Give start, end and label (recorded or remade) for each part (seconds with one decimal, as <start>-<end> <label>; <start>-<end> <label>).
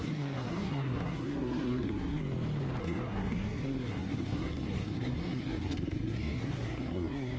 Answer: 0.0-2.2 remade; 2.2-2.8 recorded; 2.8-7.4 remade